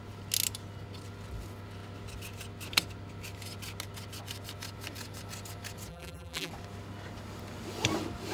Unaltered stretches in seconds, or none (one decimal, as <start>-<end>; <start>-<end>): 0.0-5.9; 6.5-8.3